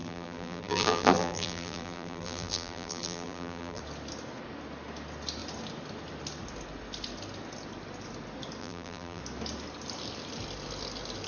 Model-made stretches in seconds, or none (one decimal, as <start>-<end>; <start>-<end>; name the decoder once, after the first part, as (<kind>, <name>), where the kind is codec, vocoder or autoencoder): 0.0-3.8 (vocoder, BigVGAN v2); 8.6-9.2